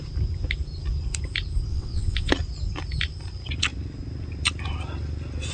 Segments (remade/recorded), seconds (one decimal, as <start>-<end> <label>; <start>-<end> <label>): 0.0-1.7 recorded; 1.7-2.3 remade; 2.3-5.5 recorded